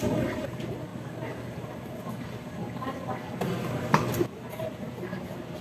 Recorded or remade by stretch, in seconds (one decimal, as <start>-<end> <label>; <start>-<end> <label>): 0.0-5.6 recorded